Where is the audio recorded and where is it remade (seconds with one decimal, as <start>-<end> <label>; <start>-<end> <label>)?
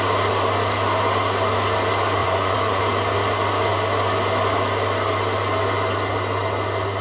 0.0-2.2 recorded; 2.2-2.8 remade; 2.8-7.0 recorded